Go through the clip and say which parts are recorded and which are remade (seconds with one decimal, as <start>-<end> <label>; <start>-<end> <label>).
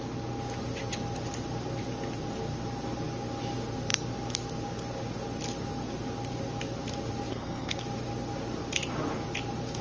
0.0-7.3 recorded; 7.3-7.8 remade; 7.8-9.8 recorded